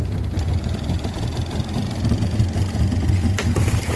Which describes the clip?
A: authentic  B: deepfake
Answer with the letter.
A